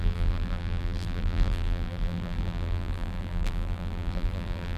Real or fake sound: fake